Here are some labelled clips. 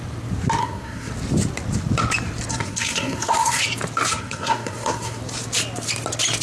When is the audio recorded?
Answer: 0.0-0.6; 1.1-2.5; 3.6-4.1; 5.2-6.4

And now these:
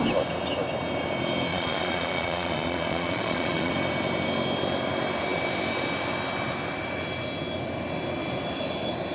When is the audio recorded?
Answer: 0.0-1.5; 3.7-9.1

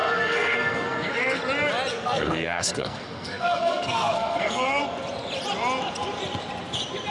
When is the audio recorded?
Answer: 1.4-1.9; 4.8-7.1

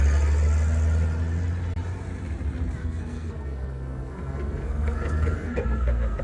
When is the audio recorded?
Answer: 0.0-2.8

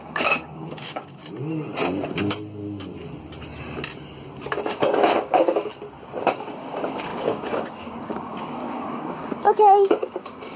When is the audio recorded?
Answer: 1.2-4.7; 5.7-6.2